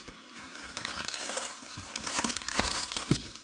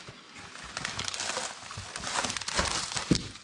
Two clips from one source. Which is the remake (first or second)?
first